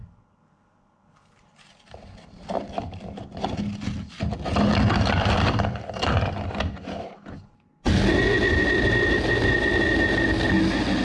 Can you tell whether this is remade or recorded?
recorded